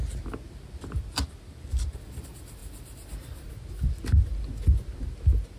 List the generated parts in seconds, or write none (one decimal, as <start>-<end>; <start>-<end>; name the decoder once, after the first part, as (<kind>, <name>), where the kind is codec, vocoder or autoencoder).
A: none